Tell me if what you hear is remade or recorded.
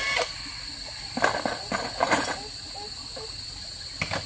recorded